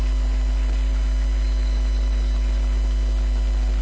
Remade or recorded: recorded